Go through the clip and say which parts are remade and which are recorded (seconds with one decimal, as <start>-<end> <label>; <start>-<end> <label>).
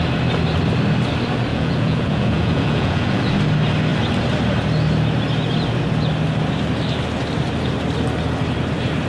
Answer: 0.0-1.5 recorded; 1.5-3.2 remade; 3.2-9.1 recorded